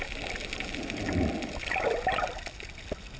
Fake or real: real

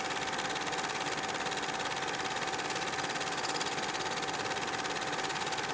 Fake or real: real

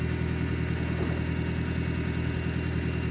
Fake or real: real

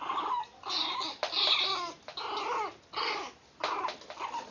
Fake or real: real